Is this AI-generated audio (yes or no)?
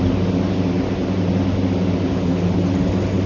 no